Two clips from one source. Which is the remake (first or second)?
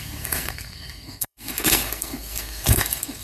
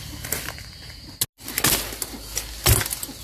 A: first